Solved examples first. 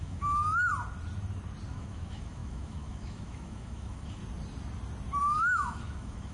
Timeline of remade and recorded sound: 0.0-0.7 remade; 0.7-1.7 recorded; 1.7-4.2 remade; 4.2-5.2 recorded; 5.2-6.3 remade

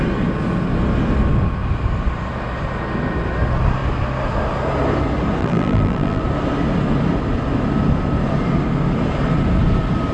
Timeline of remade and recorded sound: 0.0-5.4 recorded; 5.4-6.2 remade; 6.2-10.1 recorded